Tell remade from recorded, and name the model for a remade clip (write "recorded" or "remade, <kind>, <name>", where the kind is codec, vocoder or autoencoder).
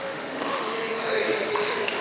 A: remade, autoencoder, DAC-VAE